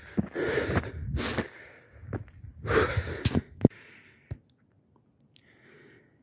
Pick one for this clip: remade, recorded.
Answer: recorded